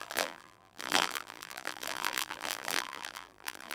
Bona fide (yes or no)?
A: no